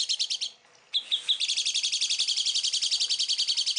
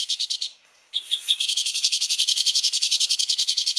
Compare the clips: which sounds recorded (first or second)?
first